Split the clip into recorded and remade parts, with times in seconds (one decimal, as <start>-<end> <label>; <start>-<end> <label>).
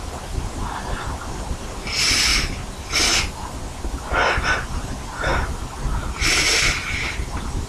0.0-2.3 remade; 2.3-4.2 recorded; 4.2-5.3 remade; 5.3-7.0 recorded; 7.0-7.7 remade